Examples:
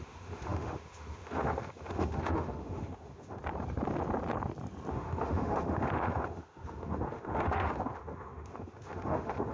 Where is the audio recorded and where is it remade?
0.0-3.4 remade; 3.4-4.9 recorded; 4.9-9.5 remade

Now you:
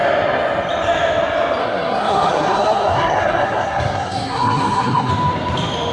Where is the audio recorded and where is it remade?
0.0-1.6 recorded; 1.6-5.1 remade; 5.1-5.9 recorded

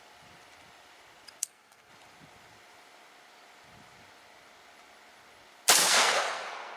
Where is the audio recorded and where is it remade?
0.0-1.4 recorded; 1.4-1.9 remade; 1.9-5.8 recorded; 5.8-6.8 remade

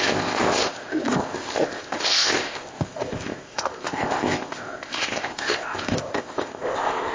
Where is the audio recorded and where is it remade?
0.0-7.1 remade

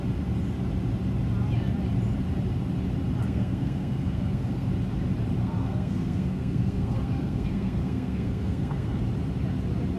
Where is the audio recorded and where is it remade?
0.0-3.2 recorded; 3.2-4.7 remade; 4.7-5.4 recorded; 5.4-9.0 remade; 9.0-10.0 recorded

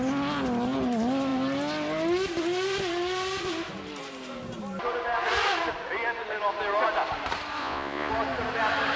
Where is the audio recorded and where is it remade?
0.0-7.6 recorded; 7.6-8.1 remade; 8.1-9.0 recorded

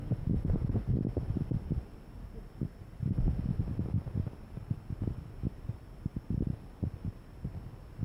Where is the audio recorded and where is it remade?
0.0-0.8 remade; 0.8-8.0 recorded